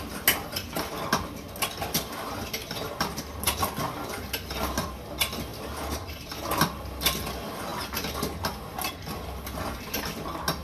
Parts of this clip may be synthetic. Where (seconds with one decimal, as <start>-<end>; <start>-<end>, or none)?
none